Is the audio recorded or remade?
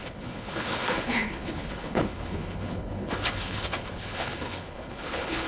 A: remade